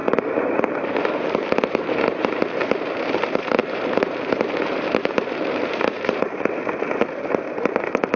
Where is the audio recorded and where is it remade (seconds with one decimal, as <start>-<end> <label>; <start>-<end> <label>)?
0.0-8.2 remade